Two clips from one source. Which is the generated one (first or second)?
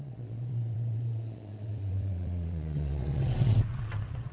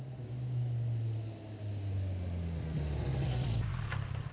first